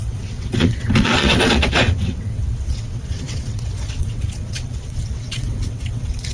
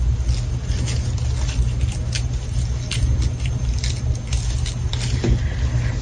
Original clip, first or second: second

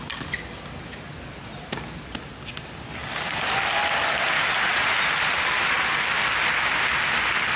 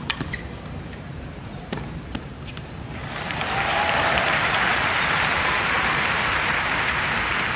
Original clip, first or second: first